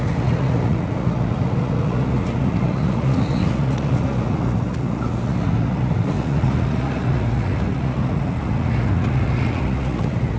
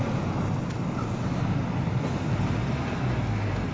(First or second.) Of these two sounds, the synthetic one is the first